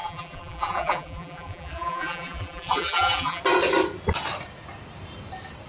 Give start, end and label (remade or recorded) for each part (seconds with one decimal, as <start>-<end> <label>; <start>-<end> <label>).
0.0-3.4 remade; 3.4-5.7 recorded